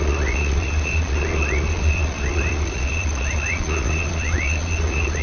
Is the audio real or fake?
fake